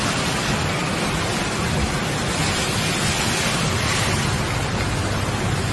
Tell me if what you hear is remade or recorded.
recorded